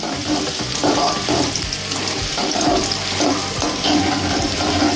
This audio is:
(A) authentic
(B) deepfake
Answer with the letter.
B